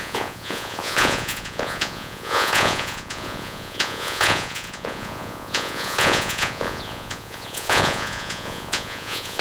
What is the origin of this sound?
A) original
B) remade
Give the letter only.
B